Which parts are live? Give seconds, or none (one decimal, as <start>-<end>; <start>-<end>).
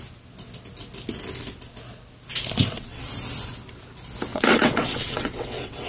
0.0-2.6; 3.1-4.3